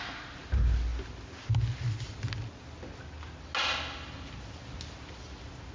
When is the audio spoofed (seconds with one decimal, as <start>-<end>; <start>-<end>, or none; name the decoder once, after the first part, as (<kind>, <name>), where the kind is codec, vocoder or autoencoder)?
none